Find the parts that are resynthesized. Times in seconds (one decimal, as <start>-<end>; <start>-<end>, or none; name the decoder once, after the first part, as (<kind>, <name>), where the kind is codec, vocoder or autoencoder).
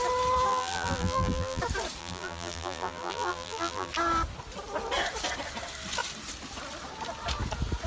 0.5-1.6 (vocoder, BigVGAN v2); 2.0-3.9